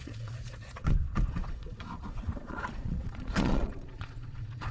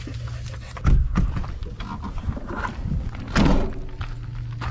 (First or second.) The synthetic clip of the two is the first